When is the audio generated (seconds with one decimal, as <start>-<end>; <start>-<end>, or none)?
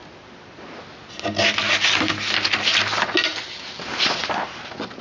none